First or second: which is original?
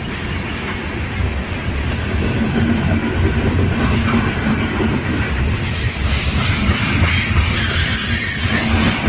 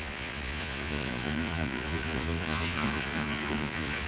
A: first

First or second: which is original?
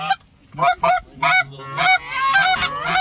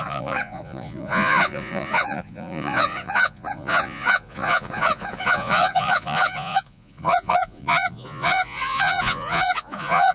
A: first